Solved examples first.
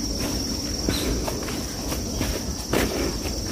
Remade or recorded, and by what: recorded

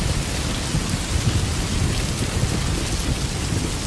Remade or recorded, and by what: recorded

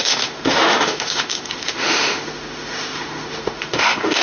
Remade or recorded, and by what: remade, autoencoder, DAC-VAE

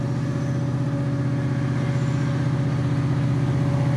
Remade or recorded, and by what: recorded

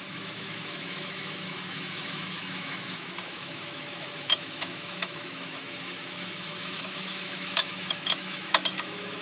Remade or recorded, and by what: remade, autoencoder, DAC-VAE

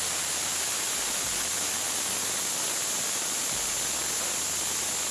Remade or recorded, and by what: recorded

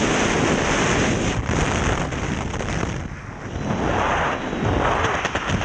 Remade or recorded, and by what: recorded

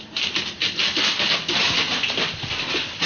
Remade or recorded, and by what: recorded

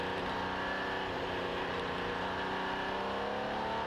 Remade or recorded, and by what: recorded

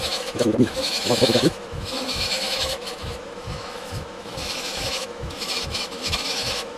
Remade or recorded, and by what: remade, autoencoder, DAC-VAE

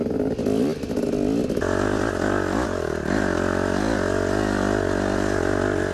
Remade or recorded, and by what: recorded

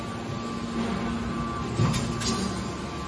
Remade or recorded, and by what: recorded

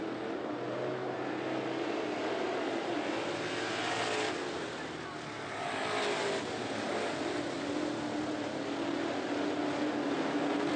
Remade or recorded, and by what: recorded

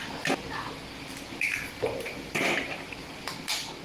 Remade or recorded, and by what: recorded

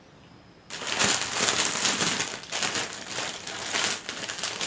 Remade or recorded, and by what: recorded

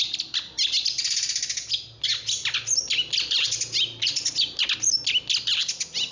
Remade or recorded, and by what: recorded